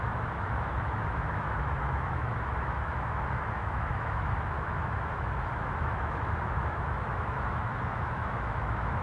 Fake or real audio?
fake